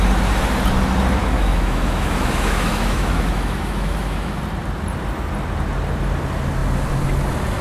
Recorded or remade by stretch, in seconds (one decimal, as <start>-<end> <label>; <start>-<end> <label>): 0.0-1.2 recorded; 1.2-4.4 remade; 4.4-7.6 recorded

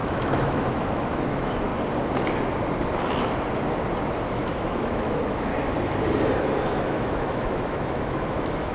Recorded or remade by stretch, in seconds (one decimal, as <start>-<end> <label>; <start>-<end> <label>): 0.0-1.7 remade; 1.7-4.3 recorded; 4.3-5.5 remade; 5.5-6.4 recorded; 6.4-8.7 remade

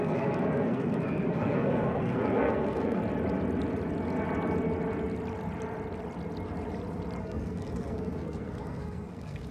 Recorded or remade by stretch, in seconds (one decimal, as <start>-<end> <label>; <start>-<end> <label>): 0.0-3.0 remade; 3.0-7.2 recorded; 7.2-9.5 remade